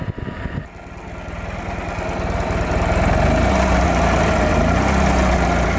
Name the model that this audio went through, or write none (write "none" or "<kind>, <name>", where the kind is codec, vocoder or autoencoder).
none